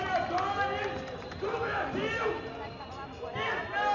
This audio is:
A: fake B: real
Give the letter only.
B